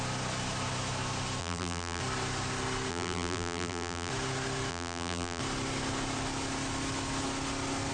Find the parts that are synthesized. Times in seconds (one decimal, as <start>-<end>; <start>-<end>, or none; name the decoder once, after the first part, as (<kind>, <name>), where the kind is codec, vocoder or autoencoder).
1.4-2.0 (vocoder, BigVGAN v2); 2.9-4.1; 4.7-5.4